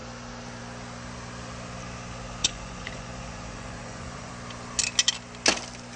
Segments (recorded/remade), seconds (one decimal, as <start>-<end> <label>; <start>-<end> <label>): 0.0-2.4 recorded; 2.4-4.3 remade; 4.3-6.0 recorded